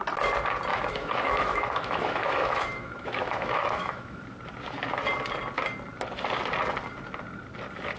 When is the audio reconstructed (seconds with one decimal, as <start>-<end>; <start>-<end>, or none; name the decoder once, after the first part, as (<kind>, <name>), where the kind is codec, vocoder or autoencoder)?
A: 0.7-4.2 (autoencoder, DAC-VAE)